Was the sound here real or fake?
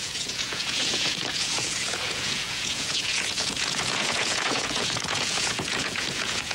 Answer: fake